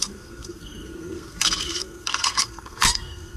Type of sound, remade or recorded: remade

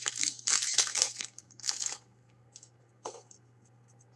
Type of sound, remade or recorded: remade